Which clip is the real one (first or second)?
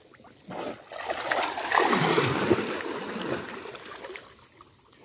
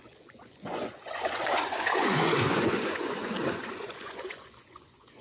first